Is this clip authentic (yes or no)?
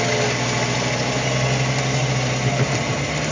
yes